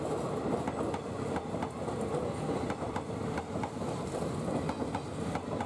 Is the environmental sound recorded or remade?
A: recorded